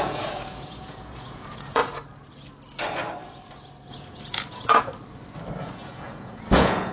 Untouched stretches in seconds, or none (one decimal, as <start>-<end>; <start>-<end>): 1.8-3.9; 4.9-5.6